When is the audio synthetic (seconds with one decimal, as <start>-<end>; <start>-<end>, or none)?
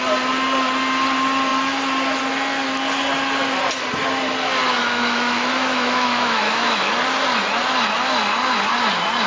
4.8-6.9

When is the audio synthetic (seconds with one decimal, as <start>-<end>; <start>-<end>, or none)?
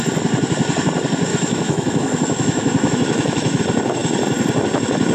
1.3-3.6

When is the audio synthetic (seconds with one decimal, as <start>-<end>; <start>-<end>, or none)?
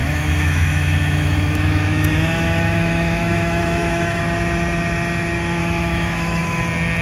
0.0-4.2; 5.6-6.6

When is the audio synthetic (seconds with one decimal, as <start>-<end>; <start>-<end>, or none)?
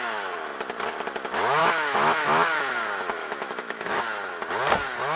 1.6-2.6; 3.2-4.0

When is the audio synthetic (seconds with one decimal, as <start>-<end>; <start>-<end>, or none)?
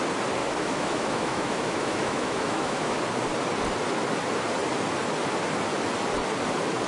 0.4-3.0